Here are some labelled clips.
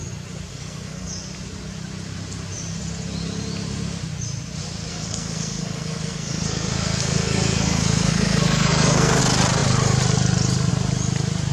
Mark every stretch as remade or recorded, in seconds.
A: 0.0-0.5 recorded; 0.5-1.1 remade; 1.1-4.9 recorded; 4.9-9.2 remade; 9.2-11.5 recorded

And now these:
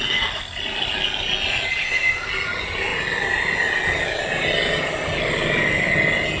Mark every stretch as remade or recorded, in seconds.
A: 0.0-1.8 recorded; 1.8-2.3 remade; 2.3-6.4 recorded

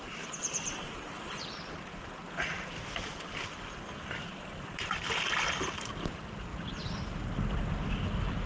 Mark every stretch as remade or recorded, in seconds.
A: 0.0-8.5 recorded

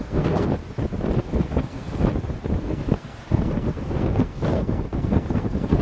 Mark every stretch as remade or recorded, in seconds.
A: 0.0-0.6 remade; 0.6-1.2 recorded; 1.2-2.1 remade; 2.1-2.6 recorded; 2.6-5.8 remade

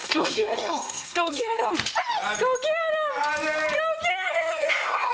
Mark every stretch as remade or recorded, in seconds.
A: 0.0-1.7 remade; 1.7-4.1 recorded; 4.1-5.1 remade

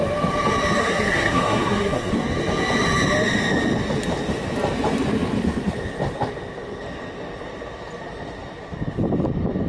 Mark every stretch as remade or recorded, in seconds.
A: 0.0-0.8 recorded; 0.8-2.1 remade; 2.1-9.7 recorded